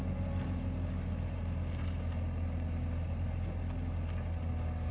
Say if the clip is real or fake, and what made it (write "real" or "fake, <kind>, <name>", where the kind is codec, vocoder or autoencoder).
real